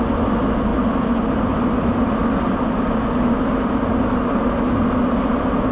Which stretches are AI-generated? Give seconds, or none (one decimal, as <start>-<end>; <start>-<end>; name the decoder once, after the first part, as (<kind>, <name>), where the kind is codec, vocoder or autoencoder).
none